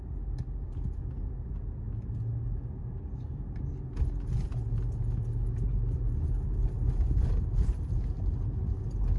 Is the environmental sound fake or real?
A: real